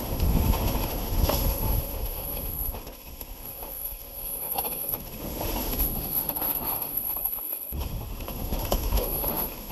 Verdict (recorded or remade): remade